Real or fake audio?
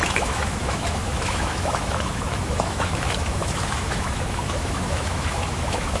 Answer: fake